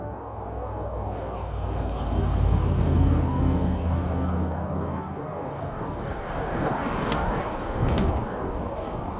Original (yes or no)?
no